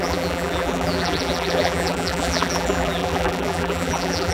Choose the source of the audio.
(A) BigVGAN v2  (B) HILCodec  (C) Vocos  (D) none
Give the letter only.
A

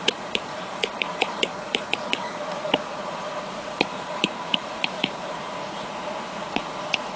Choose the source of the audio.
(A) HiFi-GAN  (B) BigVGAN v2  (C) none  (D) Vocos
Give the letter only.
D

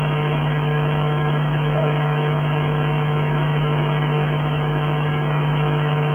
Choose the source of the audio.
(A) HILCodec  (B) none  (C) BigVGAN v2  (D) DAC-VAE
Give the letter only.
D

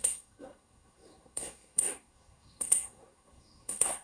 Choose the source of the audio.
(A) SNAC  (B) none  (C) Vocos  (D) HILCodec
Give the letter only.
A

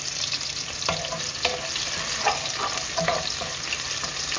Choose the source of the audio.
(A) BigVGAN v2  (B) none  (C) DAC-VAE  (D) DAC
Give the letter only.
B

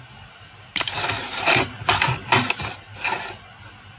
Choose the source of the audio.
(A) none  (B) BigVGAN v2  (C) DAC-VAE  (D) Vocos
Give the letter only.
A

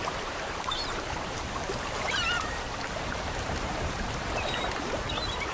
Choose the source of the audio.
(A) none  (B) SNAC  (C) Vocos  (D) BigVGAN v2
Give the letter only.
D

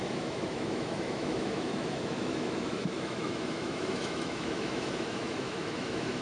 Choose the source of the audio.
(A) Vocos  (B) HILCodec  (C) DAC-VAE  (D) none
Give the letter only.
C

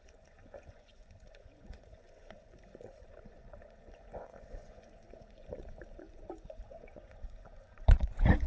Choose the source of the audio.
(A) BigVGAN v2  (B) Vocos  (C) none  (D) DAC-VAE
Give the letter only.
B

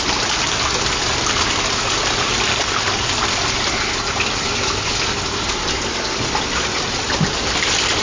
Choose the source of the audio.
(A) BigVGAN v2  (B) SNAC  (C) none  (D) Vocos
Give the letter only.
C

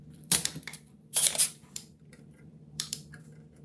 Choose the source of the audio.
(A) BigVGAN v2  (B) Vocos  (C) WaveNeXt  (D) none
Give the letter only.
A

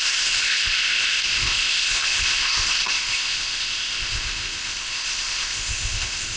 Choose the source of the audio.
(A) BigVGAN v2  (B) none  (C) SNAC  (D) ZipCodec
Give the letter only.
D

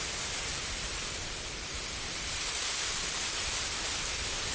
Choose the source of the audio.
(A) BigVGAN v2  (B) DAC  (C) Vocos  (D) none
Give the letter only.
A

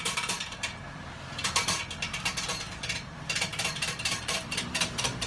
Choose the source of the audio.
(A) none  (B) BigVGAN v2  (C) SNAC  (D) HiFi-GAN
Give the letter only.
B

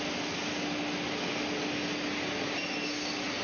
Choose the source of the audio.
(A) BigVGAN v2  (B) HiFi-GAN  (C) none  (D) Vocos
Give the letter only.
C